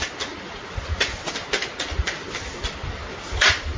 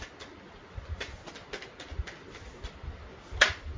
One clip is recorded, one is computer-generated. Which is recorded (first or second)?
second